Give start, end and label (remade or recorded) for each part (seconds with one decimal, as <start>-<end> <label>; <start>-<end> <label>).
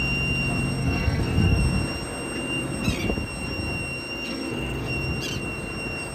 0.0-0.8 recorded; 0.8-1.6 remade; 1.6-4.3 recorded; 4.3-4.9 remade; 4.9-6.1 recorded